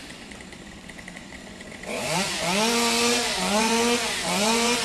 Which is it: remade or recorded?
remade